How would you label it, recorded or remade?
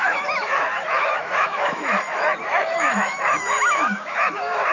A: remade